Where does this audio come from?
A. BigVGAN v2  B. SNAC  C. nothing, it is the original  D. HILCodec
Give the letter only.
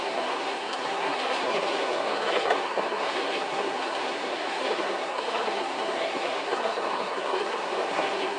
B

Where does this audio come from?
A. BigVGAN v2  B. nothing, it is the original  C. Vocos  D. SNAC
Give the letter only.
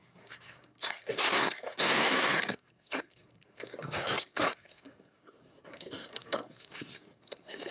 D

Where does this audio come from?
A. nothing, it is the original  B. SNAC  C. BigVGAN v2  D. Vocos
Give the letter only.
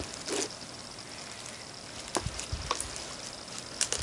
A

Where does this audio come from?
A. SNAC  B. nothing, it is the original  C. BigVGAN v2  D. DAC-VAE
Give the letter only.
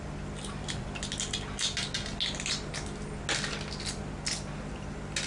B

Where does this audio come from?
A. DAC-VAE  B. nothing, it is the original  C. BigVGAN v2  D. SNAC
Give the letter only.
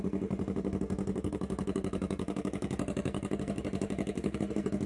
D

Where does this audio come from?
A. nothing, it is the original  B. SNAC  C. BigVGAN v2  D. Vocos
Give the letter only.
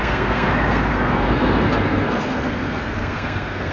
B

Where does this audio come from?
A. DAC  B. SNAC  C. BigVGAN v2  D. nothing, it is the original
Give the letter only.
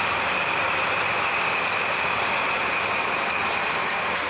D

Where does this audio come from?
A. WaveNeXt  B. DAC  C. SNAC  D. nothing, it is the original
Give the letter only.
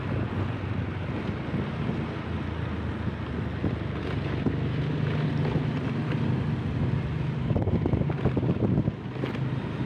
D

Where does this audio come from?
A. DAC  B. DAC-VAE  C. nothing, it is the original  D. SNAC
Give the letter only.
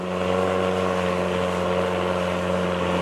C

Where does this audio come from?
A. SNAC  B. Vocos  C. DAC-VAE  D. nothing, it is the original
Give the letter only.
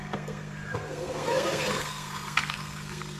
A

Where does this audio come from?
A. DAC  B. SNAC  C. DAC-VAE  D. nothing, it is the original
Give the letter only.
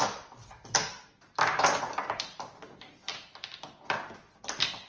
D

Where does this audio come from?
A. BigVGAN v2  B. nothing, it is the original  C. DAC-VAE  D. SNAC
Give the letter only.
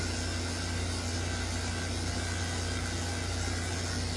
B